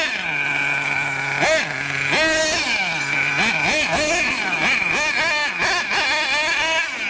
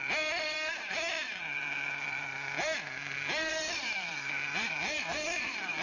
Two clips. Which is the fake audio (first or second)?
second